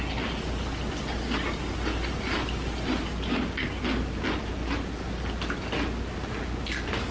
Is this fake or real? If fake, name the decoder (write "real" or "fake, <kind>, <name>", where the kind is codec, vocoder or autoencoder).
real